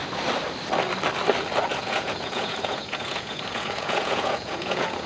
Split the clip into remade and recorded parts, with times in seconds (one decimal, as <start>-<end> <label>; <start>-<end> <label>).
0.0-1.7 recorded; 1.7-5.1 remade